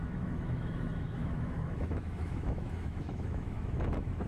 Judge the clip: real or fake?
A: fake